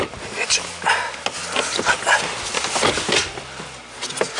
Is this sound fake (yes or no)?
no